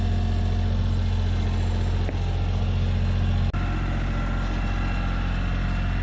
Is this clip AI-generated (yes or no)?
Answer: no